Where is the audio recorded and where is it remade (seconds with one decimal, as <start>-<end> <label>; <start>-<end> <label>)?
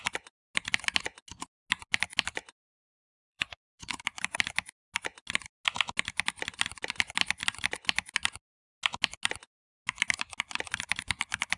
0.0-3.0 recorded; 3.0-4.0 remade; 4.0-11.6 recorded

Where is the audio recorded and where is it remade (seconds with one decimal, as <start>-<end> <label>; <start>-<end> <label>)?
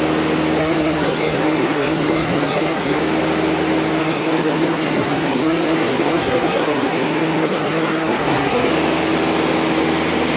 0.0-0.6 recorded; 0.6-3.0 remade; 3.0-4.0 recorded; 4.0-8.7 remade; 8.7-10.4 recorded